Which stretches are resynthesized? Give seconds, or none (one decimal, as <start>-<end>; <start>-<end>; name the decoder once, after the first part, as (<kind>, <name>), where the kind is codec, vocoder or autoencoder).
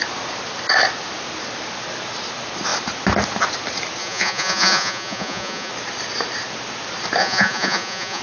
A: 4.0-5.7 (vocoder, Vocos); 7.2-8.2